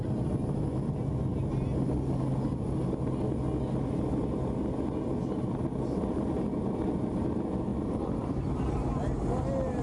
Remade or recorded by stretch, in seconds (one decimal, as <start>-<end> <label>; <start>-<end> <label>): 0.0-9.8 recorded